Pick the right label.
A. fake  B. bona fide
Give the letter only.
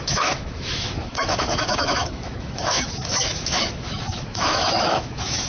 A